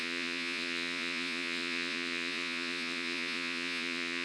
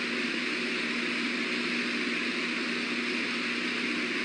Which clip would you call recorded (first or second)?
second